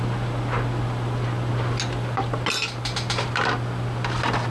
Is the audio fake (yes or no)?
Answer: no